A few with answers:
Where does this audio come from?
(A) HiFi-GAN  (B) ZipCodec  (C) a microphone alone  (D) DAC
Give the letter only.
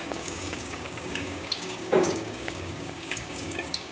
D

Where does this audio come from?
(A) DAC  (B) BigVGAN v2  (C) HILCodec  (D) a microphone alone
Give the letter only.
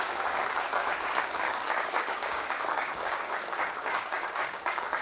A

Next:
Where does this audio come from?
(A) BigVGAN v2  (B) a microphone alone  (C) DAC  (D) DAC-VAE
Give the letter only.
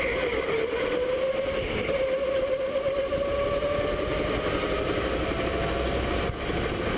B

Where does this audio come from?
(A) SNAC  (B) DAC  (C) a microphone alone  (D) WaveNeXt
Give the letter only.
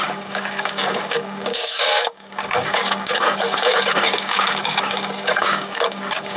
B